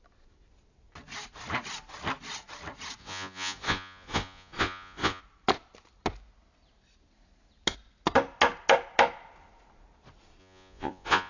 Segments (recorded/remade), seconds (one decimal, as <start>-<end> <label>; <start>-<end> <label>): 0.0-3.0 recorded; 3.0-5.2 remade; 5.2-10.4 recorded; 10.4-11.3 remade